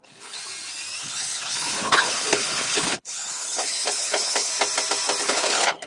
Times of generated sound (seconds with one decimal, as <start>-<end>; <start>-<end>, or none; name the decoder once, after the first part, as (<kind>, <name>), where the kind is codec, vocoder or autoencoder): 0.0-0.4 (codec, HILCodec); 1.0-4.5; 5.2-5.9

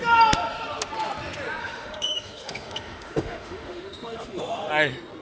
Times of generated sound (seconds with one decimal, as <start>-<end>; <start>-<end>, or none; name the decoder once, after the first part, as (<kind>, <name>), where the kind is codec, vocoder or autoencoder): 1.6-4.7 (autoencoder, DAC-VAE)

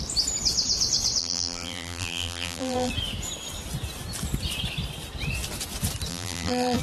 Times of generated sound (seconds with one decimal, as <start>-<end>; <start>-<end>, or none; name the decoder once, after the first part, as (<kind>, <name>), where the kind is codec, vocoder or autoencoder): 1.2-2.9 (vocoder, BigVGAN v2); 6.1-6.8

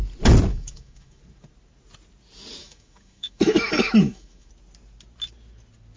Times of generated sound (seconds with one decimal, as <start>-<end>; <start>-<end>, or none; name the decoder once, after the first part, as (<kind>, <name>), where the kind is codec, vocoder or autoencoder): 0.5-1.2 (autoencoder, DAC-VAE); 2.6-4.5

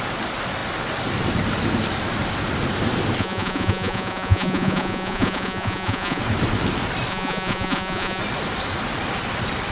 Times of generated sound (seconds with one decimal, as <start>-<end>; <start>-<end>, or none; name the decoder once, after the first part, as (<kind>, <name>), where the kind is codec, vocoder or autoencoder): 3.2-6.2 (vocoder, Vocos); 7.1-8.2

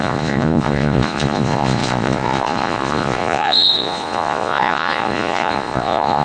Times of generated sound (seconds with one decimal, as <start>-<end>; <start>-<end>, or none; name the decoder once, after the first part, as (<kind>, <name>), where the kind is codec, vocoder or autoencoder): 0.0-6.2 (vocoder, Vocos)